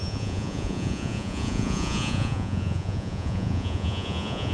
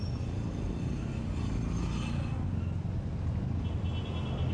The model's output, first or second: first